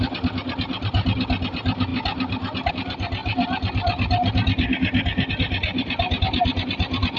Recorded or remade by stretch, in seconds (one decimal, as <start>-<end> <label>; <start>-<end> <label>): 0.0-7.2 recorded